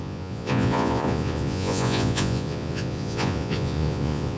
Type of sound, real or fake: fake